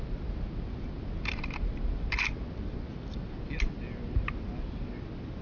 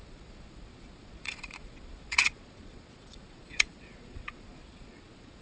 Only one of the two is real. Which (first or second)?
first